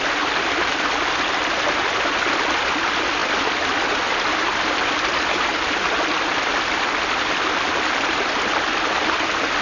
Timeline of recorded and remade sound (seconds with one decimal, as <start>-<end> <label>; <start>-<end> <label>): 0.0-9.6 recorded